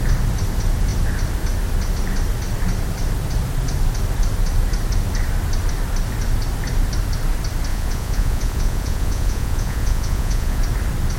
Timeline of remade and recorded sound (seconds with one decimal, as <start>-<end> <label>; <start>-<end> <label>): 0.0-7.7 recorded; 7.7-10.6 remade; 10.6-11.2 recorded